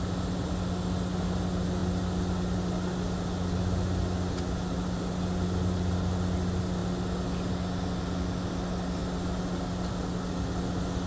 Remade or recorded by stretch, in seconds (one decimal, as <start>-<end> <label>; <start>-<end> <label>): 0.0-11.1 recorded